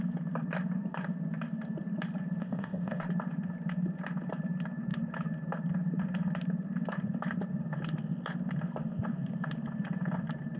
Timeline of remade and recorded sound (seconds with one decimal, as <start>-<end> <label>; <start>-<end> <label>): 0.0-2.4 recorded; 2.4-3.0 remade; 3.0-10.6 recorded